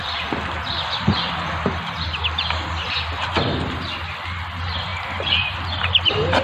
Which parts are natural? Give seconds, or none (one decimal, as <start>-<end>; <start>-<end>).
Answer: none